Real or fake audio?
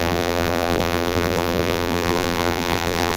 fake